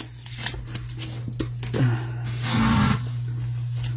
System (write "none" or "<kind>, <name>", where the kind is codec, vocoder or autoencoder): none